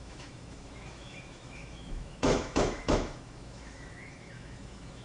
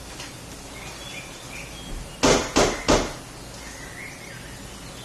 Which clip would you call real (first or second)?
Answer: second